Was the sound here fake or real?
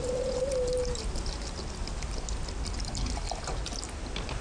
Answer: real